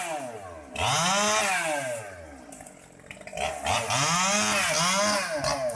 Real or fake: real